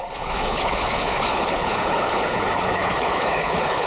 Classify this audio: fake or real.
fake